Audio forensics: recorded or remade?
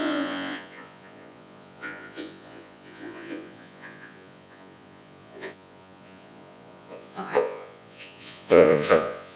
remade